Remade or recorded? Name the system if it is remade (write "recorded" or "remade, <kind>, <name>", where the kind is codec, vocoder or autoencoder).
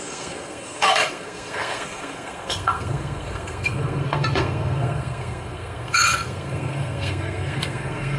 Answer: remade, codec, SNAC